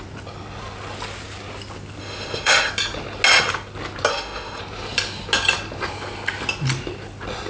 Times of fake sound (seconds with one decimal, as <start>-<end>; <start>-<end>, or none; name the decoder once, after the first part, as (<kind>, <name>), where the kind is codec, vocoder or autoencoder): 2.0-2.7 (autoencoder, DAC-VAE); 4.1-4.6